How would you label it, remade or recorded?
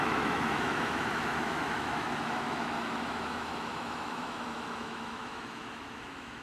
remade